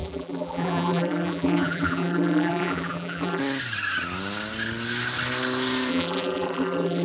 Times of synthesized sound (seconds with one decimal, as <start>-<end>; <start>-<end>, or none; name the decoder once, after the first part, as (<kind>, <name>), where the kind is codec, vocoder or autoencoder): 0.0-3.4 (vocoder, BigVGAN v2); 5.9-7.0